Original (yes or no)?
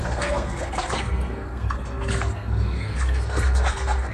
no